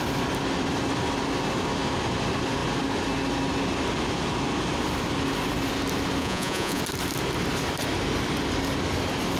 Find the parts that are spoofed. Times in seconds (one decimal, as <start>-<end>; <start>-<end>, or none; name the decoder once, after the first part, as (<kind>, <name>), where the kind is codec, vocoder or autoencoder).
6.2-6.8 (vocoder, Vocos)